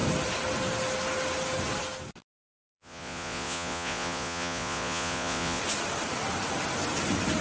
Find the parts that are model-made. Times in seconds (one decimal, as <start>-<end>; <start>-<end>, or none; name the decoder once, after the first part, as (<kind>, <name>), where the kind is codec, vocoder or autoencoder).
2.6-5.6 (vocoder, Vocos)